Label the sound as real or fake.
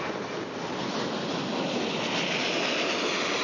real